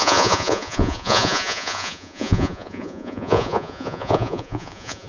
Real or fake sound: fake